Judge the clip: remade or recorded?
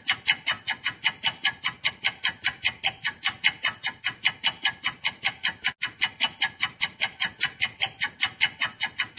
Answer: recorded